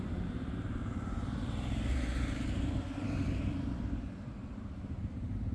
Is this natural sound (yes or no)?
no